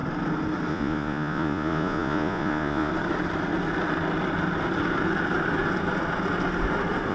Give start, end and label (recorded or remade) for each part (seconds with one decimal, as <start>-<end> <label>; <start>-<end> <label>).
0.0-0.7 recorded; 0.7-2.9 remade; 2.9-7.1 recorded